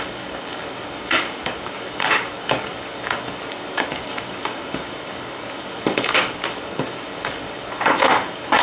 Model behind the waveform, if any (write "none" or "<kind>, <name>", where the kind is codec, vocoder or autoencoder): codec, DAC